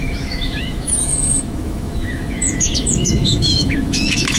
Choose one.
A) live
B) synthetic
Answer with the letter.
B